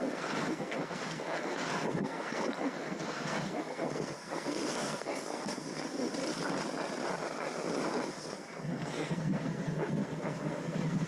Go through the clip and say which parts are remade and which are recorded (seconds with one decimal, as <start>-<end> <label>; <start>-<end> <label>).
0.0-6.2 remade; 6.2-8.1 recorded; 8.1-11.1 remade